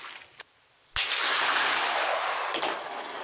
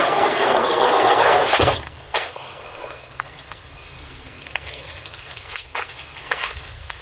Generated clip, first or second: second